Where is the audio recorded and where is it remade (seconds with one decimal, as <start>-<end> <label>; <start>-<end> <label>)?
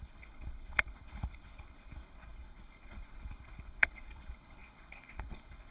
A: 0.0-5.7 remade